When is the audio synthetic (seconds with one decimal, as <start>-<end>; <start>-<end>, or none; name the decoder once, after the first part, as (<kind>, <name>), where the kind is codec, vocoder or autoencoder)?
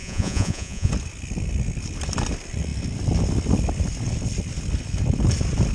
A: 0.0-0.9 (vocoder, Vocos)